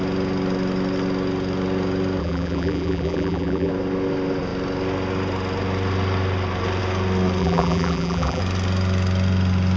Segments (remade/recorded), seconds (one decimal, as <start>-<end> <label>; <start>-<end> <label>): 0.0-2.2 recorded; 2.2-3.7 remade; 3.7-7.4 recorded; 7.4-8.4 remade; 8.4-9.8 recorded